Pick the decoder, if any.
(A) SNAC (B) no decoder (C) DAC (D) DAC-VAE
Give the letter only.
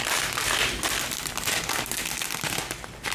B